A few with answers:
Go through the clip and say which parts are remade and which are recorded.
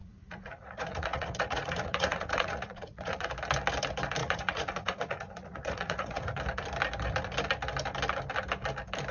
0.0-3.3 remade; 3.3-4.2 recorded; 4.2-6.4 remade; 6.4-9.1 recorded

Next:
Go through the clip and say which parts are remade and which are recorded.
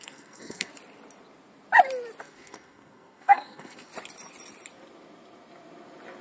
0.0-0.7 remade; 0.7-2.2 recorded; 2.2-3.9 remade; 3.9-6.2 recorded